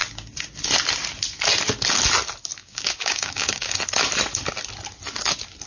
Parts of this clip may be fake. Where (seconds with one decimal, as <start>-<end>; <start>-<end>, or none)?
2.6-3.8